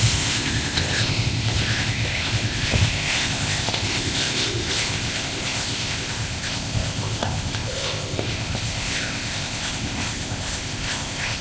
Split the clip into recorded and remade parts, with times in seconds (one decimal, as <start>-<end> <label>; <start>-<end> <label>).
0.0-11.4 remade